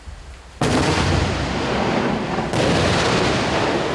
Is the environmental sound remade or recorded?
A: recorded